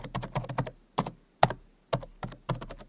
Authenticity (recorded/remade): recorded